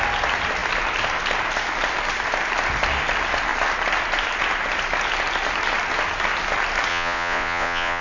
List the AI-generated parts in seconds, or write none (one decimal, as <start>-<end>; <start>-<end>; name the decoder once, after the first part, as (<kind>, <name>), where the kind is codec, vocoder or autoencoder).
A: 6.9-8.0 (vocoder, Vocos)